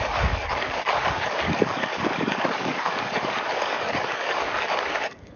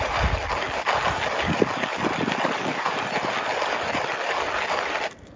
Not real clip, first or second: first